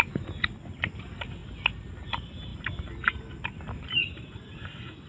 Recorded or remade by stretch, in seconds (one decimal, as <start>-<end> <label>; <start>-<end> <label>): 0.0-4.0 recorded; 4.0-5.1 remade